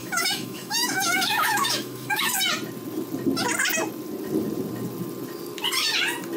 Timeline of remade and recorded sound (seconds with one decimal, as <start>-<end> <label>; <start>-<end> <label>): 0.0-2.3 remade; 2.3-6.4 recorded